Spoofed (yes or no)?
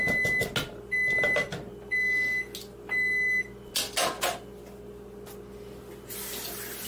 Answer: no